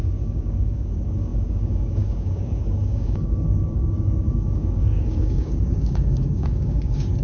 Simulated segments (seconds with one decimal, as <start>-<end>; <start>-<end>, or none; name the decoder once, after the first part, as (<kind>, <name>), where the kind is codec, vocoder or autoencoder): 0.0-7.2 (codec, DAC)